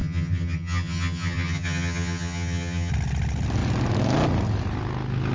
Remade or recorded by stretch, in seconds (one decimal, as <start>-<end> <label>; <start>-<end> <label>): 0.0-2.9 remade; 2.9-5.3 recorded